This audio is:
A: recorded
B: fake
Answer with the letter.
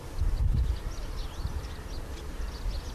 A